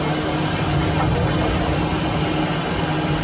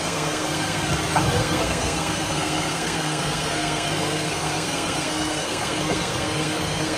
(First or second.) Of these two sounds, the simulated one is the second